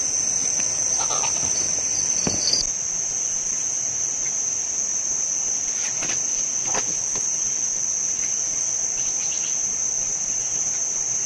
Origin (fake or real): real